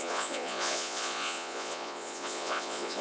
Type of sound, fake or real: fake